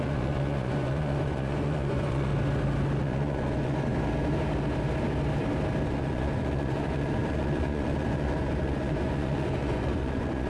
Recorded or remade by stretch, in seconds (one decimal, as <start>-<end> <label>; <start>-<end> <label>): 0.0-2.3 remade; 2.3-3.0 recorded; 3.0-3.9 remade; 3.9-5.9 recorded; 5.9-10.5 remade